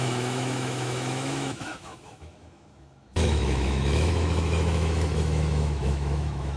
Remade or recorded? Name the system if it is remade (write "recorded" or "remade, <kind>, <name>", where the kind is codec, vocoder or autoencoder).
remade, autoencoder, DAC-VAE